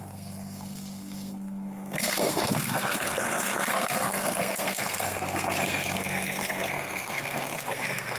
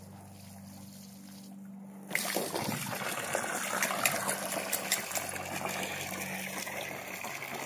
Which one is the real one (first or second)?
second